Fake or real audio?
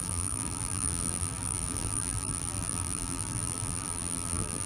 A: fake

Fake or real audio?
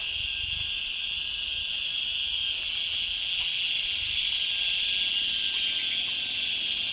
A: real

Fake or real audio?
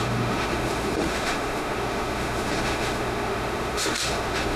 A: fake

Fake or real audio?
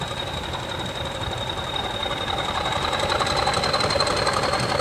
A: fake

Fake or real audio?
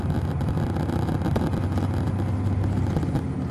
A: real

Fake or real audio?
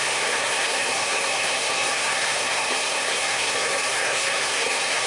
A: fake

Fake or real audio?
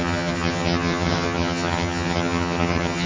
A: fake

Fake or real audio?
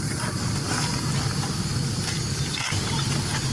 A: real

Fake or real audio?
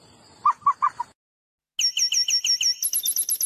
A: real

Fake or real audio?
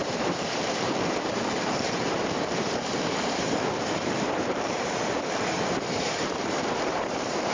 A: fake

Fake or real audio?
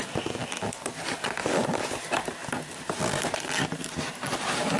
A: real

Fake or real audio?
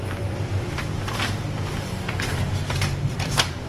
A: fake